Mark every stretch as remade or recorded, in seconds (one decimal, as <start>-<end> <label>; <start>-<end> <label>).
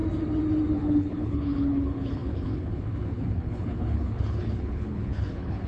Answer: 0.0-0.7 recorded; 0.7-5.7 remade